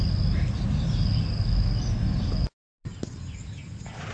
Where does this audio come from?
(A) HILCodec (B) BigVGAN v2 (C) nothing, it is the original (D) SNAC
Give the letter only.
C